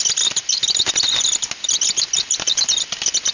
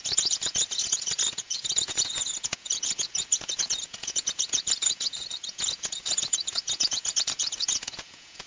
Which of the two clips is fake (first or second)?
second